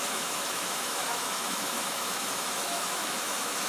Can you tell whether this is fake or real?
fake